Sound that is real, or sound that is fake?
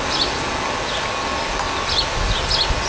real